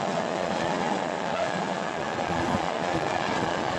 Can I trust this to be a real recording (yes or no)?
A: no